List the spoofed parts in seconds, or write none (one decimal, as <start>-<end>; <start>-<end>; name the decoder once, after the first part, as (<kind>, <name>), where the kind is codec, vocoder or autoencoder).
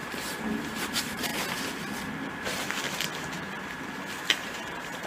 0.6-1.3 (vocoder, BigVGAN v2); 4.4-5.1